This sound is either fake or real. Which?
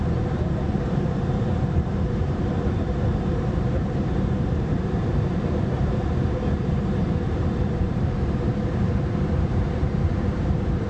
fake